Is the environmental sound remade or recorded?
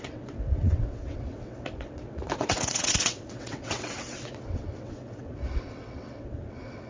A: remade